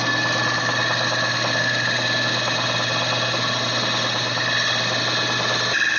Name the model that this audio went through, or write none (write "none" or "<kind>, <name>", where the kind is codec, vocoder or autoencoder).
none